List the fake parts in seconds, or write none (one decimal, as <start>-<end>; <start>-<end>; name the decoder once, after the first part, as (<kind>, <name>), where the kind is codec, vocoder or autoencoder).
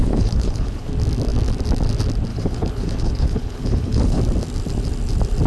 0.0-0.9 (codec, HILCodec); 2.3-4.2